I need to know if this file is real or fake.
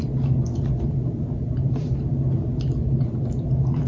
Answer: real